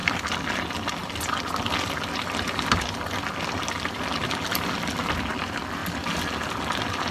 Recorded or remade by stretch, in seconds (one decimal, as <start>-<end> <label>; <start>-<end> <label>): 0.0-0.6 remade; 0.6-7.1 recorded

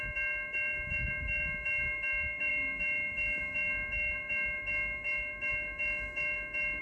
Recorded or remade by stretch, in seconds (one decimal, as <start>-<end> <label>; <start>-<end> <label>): 0.0-6.8 remade

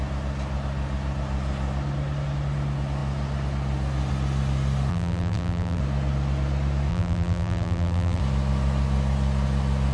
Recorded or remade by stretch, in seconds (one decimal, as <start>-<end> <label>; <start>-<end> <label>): 0.0-4.9 recorded; 4.9-5.8 remade; 5.8-6.9 recorded; 6.9-8.2 remade; 8.2-9.9 recorded

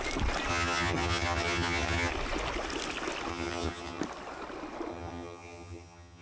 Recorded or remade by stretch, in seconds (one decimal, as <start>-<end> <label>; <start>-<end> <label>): 0.0-0.5 recorded; 0.5-2.1 remade; 2.1-3.3 recorded; 3.3-4.0 remade; 4.0-4.9 recorded; 4.9-6.2 remade